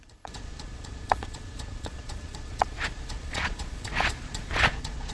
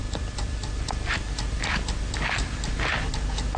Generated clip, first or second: first